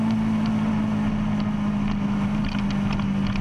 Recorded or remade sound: recorded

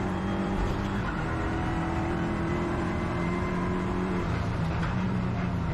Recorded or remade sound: remade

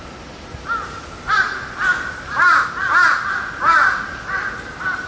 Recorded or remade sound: recorded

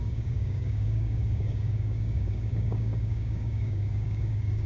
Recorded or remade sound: remade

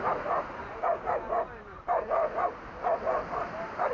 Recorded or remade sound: recorded